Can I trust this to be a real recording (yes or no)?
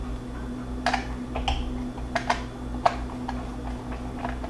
yes